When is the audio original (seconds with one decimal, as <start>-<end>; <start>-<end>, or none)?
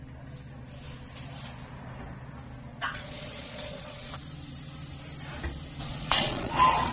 0.0-2.7; 4.1-5.8